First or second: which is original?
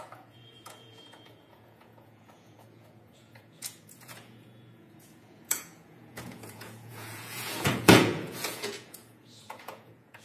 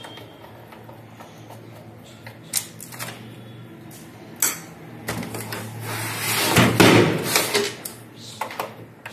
second